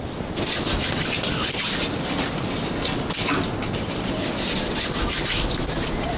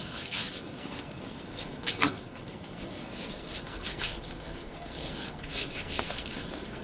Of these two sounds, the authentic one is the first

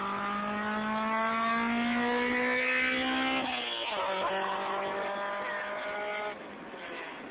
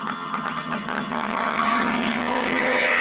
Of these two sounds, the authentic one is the first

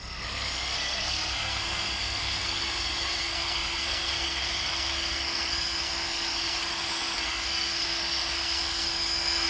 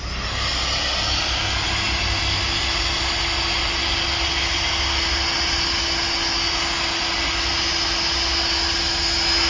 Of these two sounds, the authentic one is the second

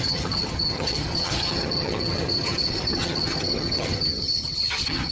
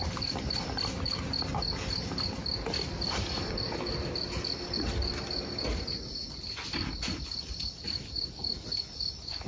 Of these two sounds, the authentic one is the second